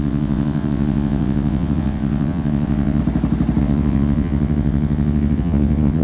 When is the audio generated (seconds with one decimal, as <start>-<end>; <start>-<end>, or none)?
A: 0.0-3.0; 3.6-6.0